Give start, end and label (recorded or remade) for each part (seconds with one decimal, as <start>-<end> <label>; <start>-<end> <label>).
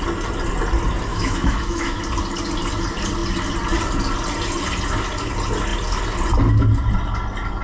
0.0-1.1 recorded; 1.1-2.0 remade; 2.0-7.6 recorded